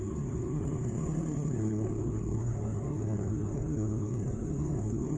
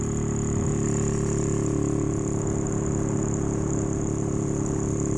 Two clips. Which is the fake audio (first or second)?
first